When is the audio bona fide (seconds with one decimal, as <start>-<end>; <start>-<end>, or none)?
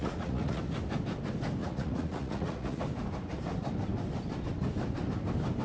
0.6-1.6; 2.8-5.6